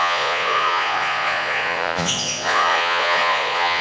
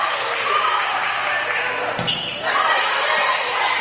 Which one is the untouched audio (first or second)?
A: second